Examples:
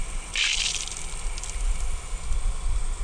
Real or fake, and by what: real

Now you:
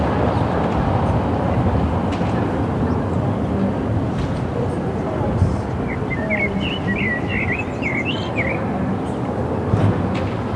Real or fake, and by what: real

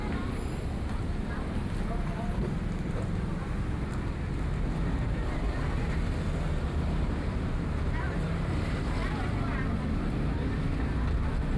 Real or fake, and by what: real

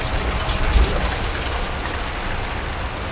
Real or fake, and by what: real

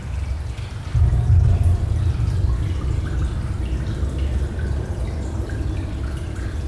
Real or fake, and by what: fake, vocoder, BigVGAN v2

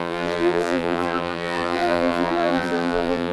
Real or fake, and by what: fake, vocoder, BigVGAN v2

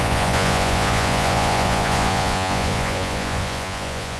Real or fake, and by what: fake, vocoder, Vocos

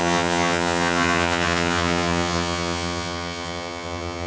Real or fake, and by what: fake, vocoder, HiFi-GAN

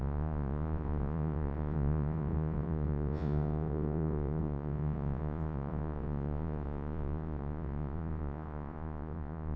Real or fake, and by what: fake, vocoder, Vocos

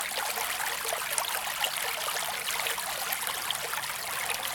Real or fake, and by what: real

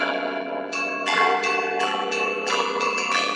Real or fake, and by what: fake, vocoder, BigVGAN v2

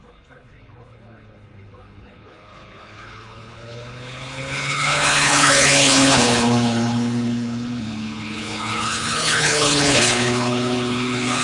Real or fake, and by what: fake, codec, HILCodec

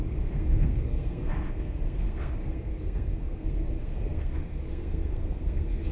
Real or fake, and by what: fake, codec, SNAC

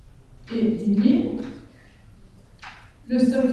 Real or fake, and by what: real